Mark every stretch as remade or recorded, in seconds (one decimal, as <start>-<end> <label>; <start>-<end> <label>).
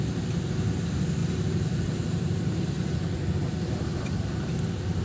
0.0-1.2 recorded; 1.2-2.6 remade; 2.6-3.9 recorded; 3.9-5.0 remade